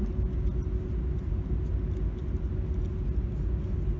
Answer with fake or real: real